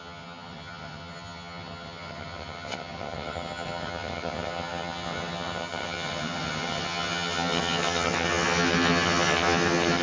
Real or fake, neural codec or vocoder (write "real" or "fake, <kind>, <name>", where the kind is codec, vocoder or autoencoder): fake, vocoder, HiFi-GAN